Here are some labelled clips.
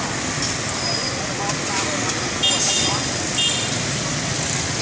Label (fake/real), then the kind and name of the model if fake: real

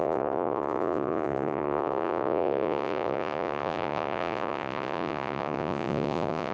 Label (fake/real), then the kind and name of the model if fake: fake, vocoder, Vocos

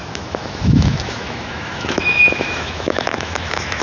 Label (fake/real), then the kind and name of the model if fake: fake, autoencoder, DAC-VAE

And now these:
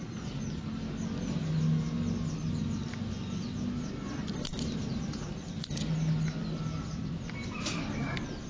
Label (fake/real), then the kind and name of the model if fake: real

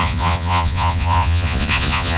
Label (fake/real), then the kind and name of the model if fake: fake, vocoder, Vocos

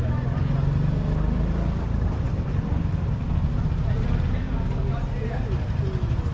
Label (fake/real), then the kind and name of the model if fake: real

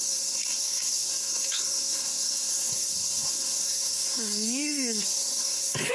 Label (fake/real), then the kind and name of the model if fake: fake, codec, SNAC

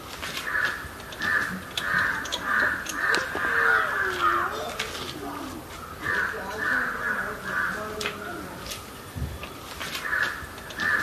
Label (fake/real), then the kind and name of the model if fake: real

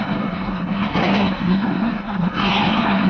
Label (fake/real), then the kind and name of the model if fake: fake, codec, SNAC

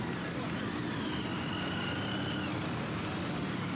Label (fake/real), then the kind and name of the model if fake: real